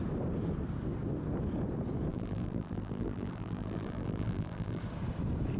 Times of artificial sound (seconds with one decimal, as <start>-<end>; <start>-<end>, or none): 2.1-4.8